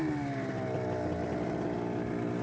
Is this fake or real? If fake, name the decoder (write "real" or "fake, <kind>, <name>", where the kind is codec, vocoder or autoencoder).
real